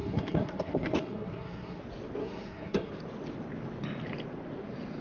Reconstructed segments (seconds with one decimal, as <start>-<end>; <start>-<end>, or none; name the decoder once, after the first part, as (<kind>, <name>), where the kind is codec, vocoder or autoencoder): 0.0-1.8 (codec, SNAC); 2.2-2.9